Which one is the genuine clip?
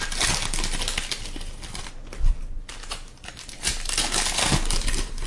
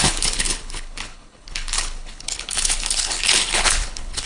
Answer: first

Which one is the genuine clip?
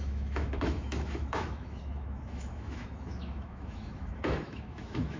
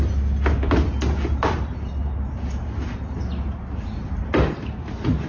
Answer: second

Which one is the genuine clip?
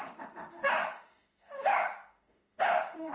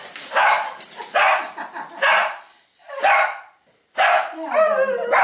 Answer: second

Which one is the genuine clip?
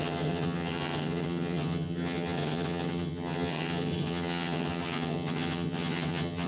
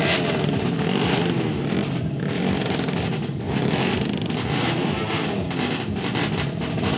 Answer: second